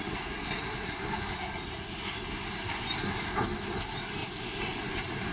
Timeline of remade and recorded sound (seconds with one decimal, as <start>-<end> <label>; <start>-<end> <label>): 0.0-5.3 recorded